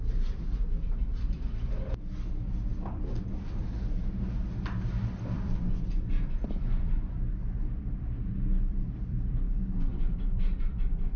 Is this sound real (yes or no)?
no